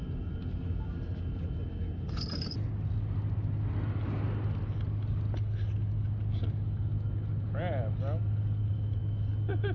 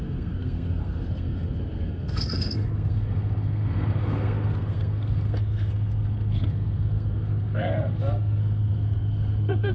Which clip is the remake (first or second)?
second